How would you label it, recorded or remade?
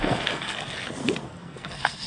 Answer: remade